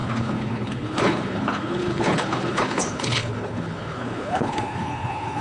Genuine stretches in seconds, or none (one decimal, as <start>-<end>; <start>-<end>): none